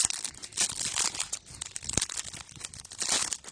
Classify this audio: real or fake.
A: real